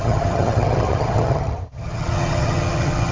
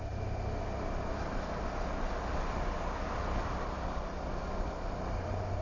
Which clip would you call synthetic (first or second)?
first